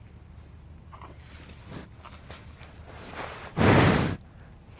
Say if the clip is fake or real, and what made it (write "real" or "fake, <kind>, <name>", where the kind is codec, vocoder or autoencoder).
real